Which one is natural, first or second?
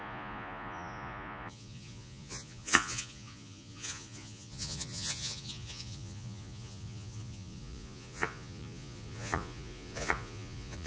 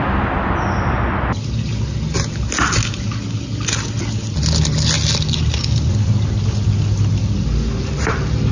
second